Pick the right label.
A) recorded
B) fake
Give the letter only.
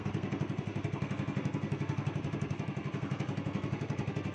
B